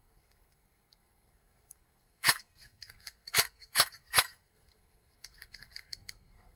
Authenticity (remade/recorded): remade